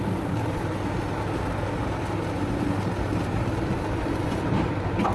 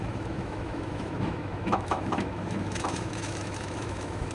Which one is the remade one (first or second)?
second